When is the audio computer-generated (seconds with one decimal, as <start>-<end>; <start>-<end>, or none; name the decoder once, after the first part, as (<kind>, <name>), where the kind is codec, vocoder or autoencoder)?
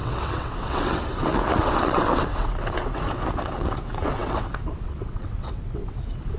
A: 0.0-6.4 (vocoder, WaveNeXt)